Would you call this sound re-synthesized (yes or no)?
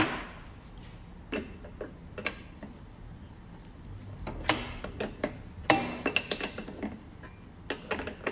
no